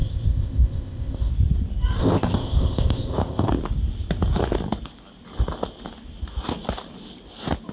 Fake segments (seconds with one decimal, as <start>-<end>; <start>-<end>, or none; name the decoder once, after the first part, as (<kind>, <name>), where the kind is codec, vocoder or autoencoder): 0.0-1.3 (codec, ZipCodec); 2.0-3.5